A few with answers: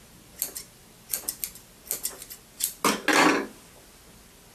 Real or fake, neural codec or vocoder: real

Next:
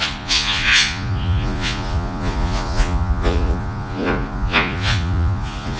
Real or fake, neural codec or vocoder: fake, vocoder, Vocos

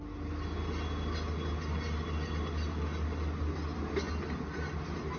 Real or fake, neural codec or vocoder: real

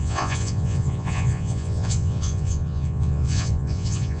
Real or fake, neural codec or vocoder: fake, vocoder, Vocos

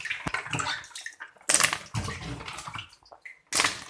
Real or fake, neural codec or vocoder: real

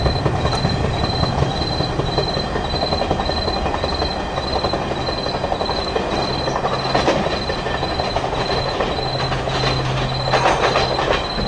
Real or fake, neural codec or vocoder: real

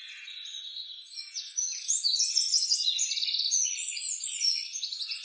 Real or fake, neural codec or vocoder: fake, vocoder, Vocos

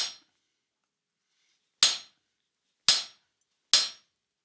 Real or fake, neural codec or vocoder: real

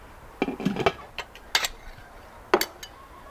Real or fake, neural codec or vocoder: real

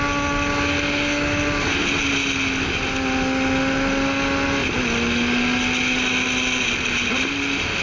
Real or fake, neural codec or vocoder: real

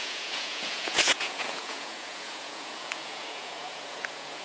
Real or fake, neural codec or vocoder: fake, vocoder, Vocos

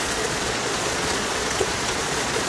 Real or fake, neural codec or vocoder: fake, vocoder, Vocos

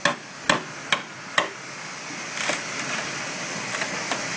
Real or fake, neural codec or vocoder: real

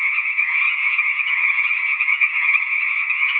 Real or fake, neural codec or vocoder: fake, vocoder, Vocos